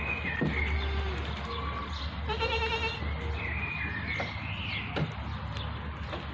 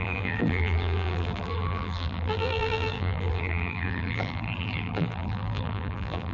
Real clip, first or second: first